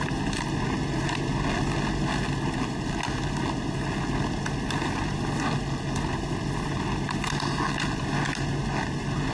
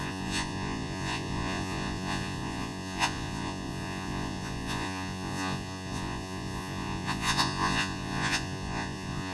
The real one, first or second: first